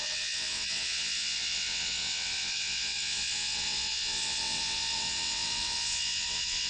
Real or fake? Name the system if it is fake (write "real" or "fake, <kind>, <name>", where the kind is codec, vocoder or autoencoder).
fake, vocoder, WaveNeXt